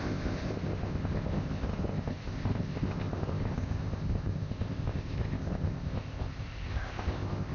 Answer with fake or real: fake